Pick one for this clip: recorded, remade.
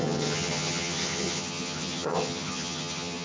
remade